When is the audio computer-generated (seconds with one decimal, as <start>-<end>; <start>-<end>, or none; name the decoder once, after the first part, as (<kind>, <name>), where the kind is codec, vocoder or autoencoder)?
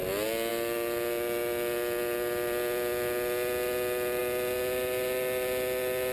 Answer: none